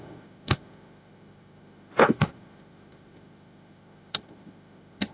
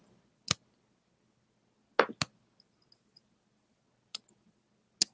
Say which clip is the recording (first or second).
second